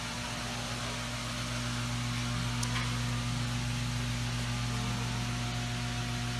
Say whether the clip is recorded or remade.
recorded